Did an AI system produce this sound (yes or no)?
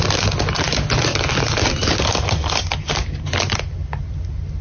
no